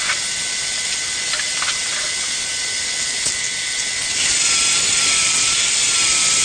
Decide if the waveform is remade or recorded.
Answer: recorded